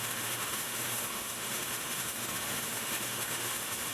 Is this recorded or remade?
remade